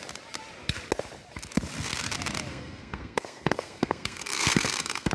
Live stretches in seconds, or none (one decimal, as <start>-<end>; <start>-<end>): 0.0-2.5